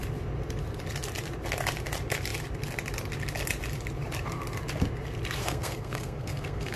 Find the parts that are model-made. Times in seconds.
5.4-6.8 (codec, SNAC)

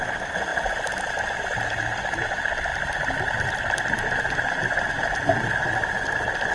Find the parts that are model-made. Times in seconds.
none